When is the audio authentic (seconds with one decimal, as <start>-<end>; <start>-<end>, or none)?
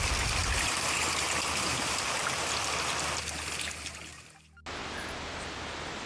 0.0-0.4; 2.2-6.1